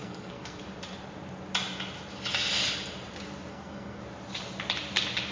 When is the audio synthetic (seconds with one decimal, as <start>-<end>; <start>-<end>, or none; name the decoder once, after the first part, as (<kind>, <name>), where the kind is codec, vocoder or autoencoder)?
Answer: 0.0-0.6 (codec, SNAC); 3.5-4.0